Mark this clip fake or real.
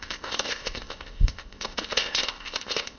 fake